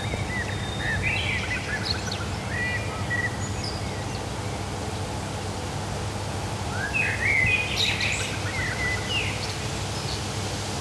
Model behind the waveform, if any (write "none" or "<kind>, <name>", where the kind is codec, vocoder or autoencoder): none